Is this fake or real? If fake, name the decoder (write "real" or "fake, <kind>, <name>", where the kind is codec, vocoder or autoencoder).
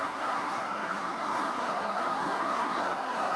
fake, codec, SNAC